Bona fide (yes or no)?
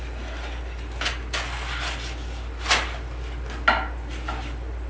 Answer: yes